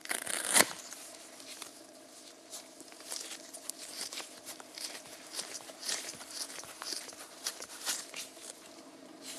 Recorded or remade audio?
remade